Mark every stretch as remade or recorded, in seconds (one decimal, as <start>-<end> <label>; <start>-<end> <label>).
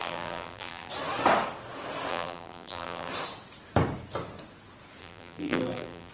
0.0-0.9 remade; 0.9-2.1 recorded; 2.1-3.1 remade; 3.1-5.0 recorded; 5.0-6.1 remade